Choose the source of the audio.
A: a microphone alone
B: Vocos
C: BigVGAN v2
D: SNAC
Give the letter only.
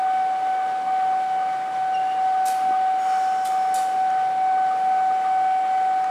A